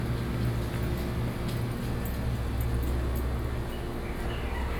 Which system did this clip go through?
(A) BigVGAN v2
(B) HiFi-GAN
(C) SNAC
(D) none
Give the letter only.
D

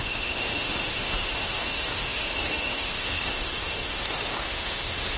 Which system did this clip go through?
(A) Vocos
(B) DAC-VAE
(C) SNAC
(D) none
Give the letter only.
B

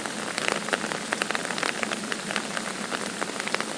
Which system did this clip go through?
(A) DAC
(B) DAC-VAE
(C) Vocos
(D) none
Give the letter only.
D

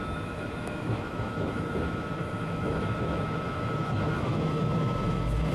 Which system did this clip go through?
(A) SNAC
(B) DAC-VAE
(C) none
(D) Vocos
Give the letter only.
B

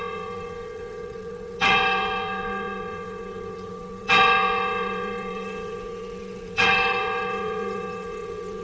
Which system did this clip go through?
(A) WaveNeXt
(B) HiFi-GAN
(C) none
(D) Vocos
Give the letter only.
A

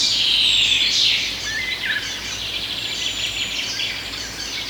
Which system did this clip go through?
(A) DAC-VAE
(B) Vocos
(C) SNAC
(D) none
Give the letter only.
D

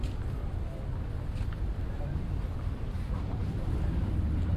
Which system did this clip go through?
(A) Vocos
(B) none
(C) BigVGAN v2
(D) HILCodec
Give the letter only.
B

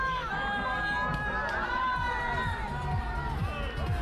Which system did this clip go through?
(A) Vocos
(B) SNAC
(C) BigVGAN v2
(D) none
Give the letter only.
D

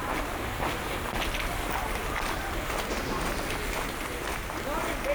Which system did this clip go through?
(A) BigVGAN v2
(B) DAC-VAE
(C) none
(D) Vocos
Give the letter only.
C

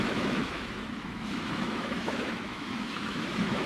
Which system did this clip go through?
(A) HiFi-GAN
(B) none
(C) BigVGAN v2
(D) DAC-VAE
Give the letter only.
D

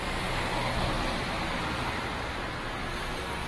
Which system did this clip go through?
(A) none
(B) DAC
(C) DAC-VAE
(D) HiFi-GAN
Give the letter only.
A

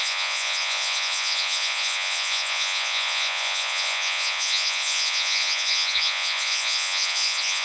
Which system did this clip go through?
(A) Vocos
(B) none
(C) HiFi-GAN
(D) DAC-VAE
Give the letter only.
A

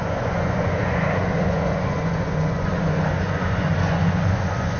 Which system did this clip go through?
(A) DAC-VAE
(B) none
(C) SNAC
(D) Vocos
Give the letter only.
D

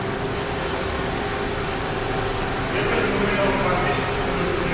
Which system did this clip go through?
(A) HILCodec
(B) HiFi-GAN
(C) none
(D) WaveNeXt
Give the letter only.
C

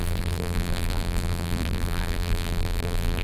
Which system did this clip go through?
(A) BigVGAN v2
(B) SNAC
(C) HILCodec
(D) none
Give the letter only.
A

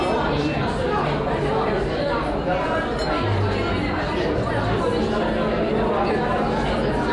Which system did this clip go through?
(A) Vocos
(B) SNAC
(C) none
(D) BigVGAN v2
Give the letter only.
C